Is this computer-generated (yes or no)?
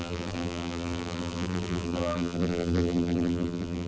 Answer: yes